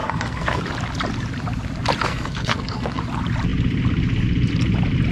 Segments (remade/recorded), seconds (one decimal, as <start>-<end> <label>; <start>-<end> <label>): 0.0-0.6 remade; 0.6-2.0 recorded; 2.0-3.0 remade; 3.0-5.1 recorded